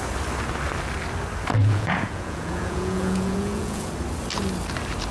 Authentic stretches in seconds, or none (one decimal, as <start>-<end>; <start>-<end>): 0.0-1.6; 3.9-5.1